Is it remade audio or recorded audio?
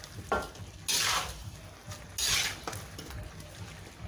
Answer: recorded